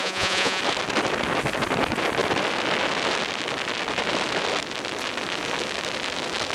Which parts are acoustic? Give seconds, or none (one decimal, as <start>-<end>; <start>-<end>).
0.6-6.5